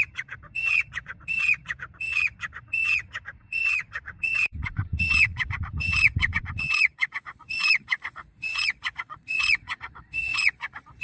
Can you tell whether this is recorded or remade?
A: remade